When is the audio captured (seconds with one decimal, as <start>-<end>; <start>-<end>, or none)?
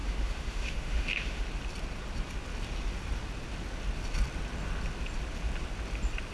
1.4-6.3